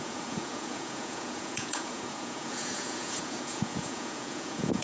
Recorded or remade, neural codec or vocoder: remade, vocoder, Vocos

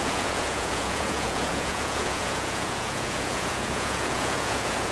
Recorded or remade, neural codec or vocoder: remade, vocoder, Vocos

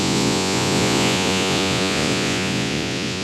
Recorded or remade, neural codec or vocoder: remade, vocoder, Vocos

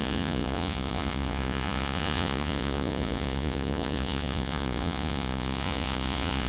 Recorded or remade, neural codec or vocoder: remade, vocoder, Vocos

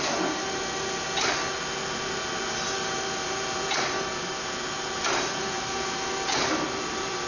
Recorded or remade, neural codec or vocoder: recorded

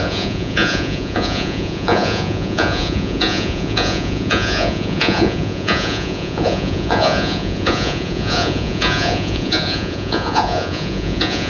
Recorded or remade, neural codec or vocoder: remade, vocoder, Vocos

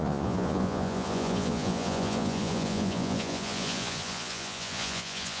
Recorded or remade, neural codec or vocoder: remade, vocoder, Vocos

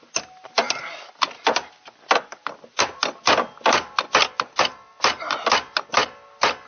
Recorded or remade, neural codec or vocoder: recorded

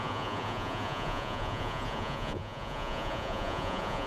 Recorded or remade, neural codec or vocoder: remade, vocoder, Vocos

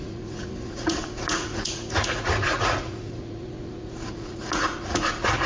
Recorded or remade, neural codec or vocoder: remade, vocoder, Vocos